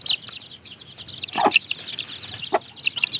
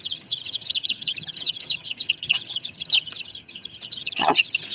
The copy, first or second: second